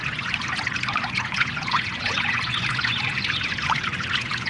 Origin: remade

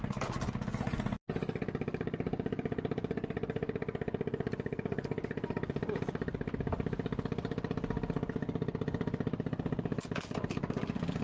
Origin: recorded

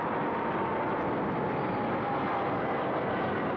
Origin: recorded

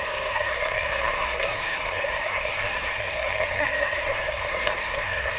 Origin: remade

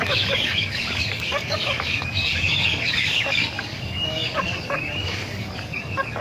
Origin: remade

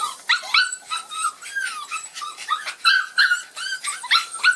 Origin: remade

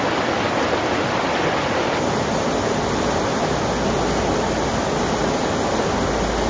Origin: recorded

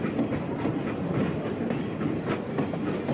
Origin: recorded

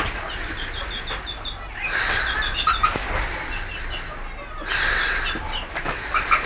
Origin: recorded